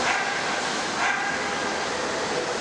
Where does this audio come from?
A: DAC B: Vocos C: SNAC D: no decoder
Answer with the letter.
D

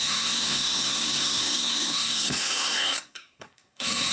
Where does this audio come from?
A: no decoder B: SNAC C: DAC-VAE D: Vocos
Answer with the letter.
B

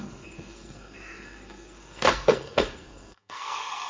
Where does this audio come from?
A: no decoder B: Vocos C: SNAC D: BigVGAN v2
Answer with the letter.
C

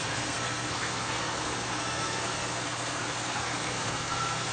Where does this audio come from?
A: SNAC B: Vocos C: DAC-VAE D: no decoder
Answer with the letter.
A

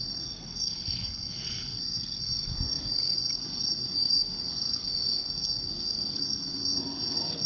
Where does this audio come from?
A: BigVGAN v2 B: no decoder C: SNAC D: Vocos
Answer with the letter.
C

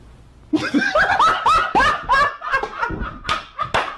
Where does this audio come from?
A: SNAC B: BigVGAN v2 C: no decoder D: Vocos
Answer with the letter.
C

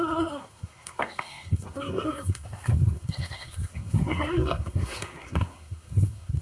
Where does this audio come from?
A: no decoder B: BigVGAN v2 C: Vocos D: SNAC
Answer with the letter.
D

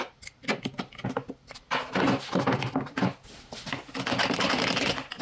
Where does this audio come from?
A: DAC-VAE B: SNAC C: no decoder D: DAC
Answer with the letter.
C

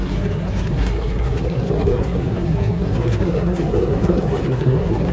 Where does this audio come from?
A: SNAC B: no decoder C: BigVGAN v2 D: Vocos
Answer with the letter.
A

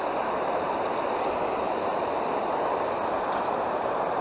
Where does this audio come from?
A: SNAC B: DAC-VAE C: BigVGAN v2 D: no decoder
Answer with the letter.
D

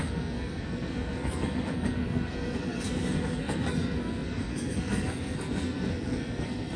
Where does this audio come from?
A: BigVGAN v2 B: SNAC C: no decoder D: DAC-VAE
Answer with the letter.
B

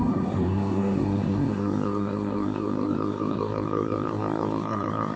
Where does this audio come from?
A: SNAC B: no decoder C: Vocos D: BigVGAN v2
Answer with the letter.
A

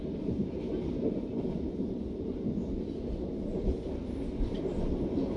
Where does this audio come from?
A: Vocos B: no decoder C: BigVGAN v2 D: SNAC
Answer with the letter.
B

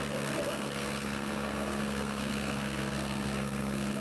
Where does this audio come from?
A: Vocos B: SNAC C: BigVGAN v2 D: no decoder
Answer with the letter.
B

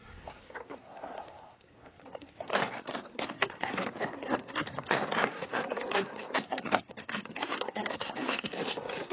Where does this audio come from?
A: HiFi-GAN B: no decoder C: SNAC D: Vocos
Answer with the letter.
C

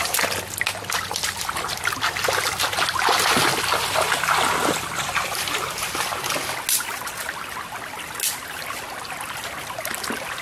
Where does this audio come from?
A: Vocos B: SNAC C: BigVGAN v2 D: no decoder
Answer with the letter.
D